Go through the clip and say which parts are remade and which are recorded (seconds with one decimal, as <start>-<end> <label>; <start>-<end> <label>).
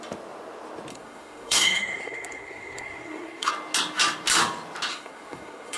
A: 0.0-0.9 recorded; 0.9-3.5 remade; 3.5-4.9 recorded; 4.9-5.8 remade